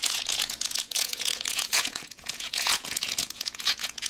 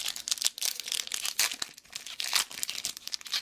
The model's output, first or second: first